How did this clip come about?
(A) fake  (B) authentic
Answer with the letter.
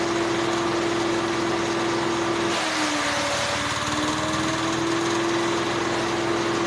B